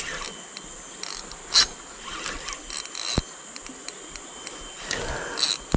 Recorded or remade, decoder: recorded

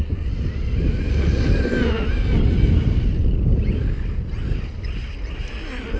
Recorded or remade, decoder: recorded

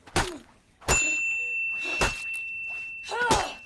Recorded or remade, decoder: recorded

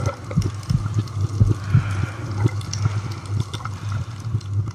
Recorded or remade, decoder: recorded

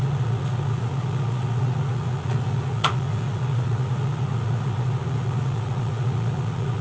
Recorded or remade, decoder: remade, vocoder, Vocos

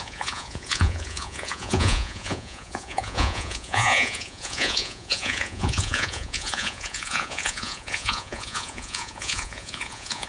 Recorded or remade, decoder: remade, vocoder, Vocos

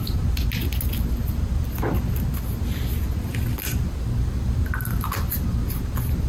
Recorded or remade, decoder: recorded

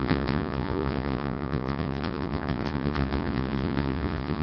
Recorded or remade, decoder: remade, vocoder, Vocos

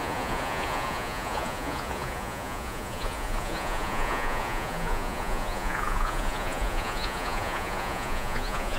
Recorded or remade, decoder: remade, vocoder, Vocos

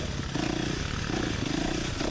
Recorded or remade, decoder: recorded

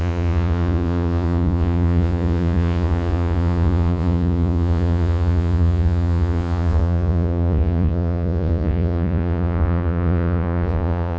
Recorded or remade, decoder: remade, vocoder, Vocos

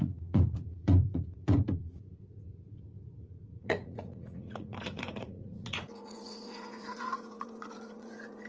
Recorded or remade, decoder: remade, vocoder, Vocos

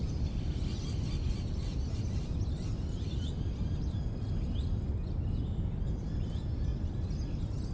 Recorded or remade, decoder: recorded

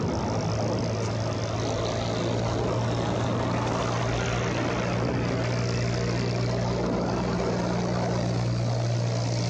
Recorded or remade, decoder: recorded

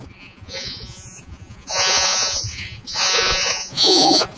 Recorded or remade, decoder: remade, vocoder, Vocos